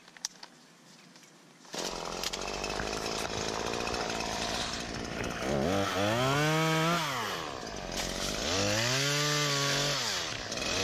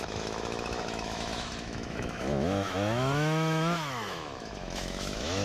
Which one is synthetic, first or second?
second